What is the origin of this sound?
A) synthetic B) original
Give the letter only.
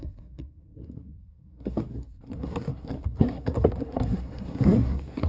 A